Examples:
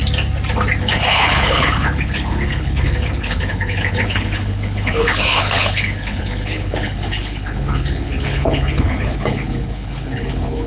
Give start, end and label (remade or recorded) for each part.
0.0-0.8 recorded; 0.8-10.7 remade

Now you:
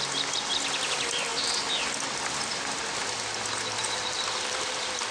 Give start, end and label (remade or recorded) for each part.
0.0-5.1 recorded

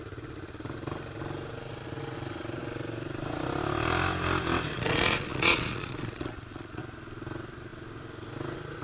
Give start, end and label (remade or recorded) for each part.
0.0-4.7 recorded; 4.7-6.8 remade; 6.8-8.8 recorded